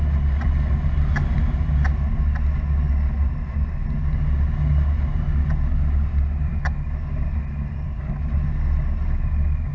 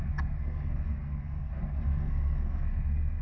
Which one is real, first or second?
first